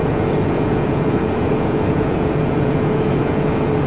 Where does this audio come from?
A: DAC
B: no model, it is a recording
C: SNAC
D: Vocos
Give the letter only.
D